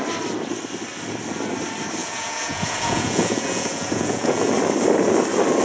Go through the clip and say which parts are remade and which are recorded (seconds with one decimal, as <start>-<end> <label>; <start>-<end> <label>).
0.0-2.0 recorded; 2.0-4.5 remade; 4.5-5.6 recorded